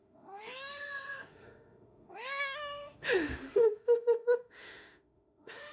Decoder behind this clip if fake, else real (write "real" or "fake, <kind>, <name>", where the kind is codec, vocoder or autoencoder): fake, autoencoder, DAC-VAE